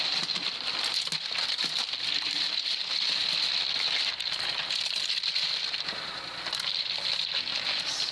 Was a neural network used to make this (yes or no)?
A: no